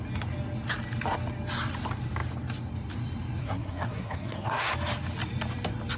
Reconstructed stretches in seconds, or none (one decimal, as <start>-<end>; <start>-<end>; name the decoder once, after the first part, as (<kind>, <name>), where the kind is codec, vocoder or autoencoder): 3.4-4.7 (codec, SNAC)